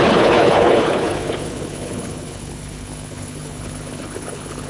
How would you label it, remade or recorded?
remade